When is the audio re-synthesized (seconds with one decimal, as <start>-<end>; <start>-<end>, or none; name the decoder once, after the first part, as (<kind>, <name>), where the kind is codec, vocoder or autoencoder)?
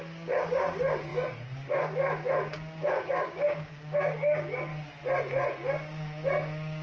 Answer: 0.0-4.7 (codec, DAC); 5.7-6.8